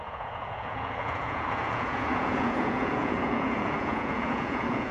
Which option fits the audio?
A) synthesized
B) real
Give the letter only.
A